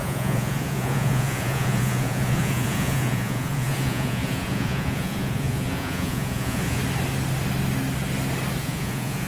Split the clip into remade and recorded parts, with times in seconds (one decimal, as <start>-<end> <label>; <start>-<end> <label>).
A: 0.0-6.8 remade; 6.8-8.6 recorded; 8.6-9.3 remade